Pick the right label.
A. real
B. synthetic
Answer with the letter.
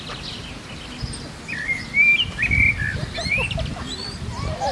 A